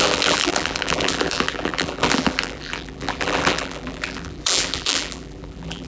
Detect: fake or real fake